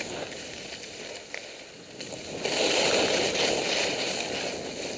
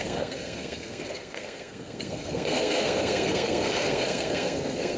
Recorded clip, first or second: first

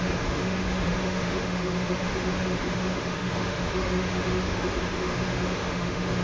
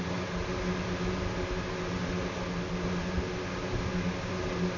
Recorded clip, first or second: second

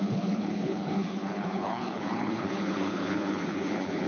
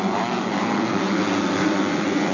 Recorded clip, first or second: second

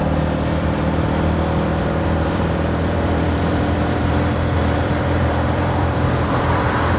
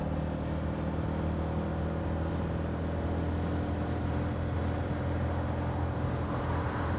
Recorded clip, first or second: second